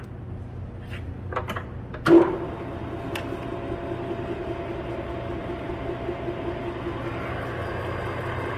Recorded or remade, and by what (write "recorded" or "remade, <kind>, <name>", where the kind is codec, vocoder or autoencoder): recorded